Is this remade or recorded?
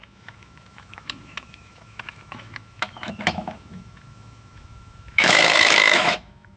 remade